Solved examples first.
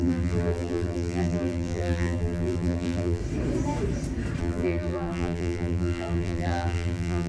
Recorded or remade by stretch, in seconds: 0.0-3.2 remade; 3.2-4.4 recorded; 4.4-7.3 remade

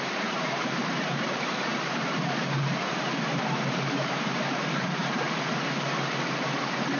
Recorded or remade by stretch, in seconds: 0.0-1.7 remade; 1.7-3.7 recorded; 3.7-5.0 remade; 5.0-7.0 recorded

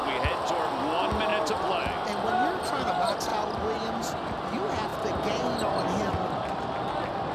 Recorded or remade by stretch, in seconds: 0.0-7.3 recorded